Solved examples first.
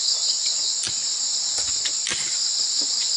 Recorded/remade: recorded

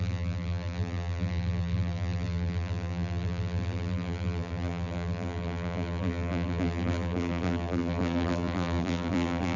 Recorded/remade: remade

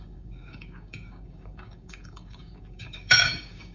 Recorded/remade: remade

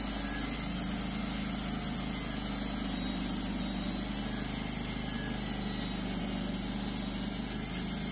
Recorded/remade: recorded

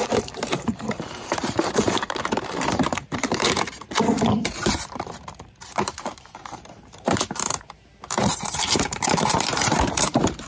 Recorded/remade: remade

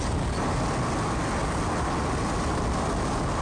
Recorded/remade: recorded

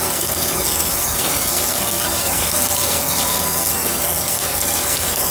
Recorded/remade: remade